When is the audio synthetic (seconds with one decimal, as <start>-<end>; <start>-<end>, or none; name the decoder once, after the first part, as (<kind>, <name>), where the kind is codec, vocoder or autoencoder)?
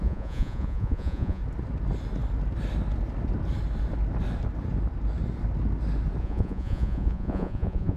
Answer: 0.0-1.4 (vocoder, Vocos); 6.2-8.0